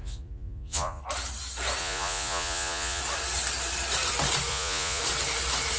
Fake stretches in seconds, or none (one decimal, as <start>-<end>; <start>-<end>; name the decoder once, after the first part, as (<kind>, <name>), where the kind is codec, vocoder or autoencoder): 0.0-1.0 (vocoder, Vocos); 1.8-3.0; 4.5-5.0